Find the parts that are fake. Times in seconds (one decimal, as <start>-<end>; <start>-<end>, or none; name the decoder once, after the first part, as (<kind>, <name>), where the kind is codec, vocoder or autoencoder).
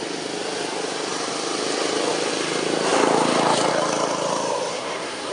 4.7-5.3 (codec, SNAC)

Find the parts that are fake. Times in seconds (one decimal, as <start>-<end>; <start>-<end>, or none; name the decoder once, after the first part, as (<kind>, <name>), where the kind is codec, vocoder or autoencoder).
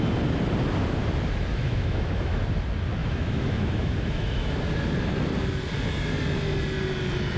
1.5-2.4 (autoencoder, DAC-VAE); 3.0-4.6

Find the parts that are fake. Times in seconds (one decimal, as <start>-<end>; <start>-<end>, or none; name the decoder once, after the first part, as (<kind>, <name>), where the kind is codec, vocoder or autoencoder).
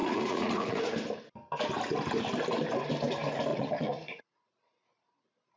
0.0-0.8 (vocoder, Vocos); 3.5-4.5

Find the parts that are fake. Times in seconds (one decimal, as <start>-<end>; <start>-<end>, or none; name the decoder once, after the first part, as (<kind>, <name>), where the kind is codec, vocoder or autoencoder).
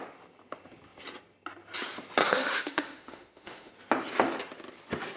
2.2-3.7 (autoencoder, DAC-VAE)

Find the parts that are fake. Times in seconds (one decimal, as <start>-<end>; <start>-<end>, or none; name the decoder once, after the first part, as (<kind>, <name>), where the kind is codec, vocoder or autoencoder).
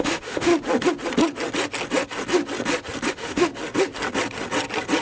0.0-0.5 (autoencoder, DAC-VAE); 3.1-3.5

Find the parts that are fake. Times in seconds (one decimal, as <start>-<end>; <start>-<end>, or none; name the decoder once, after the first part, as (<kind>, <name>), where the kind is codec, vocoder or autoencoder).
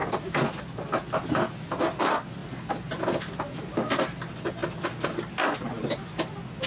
none